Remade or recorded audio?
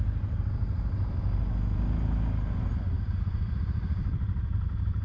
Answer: recorded